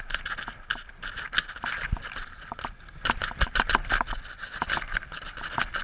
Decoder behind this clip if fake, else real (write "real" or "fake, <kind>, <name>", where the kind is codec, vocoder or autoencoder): real